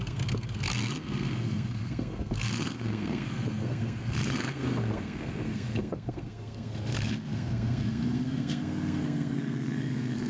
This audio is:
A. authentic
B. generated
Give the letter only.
B